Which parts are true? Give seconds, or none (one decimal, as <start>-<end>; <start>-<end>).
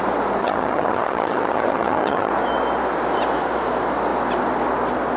0.0-0.4; 2.3-5.2